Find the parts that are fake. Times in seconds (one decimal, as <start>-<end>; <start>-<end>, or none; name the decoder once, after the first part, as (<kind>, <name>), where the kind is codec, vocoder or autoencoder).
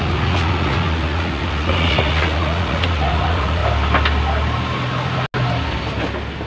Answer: 0.0-3.6 (vocoder, Vocos)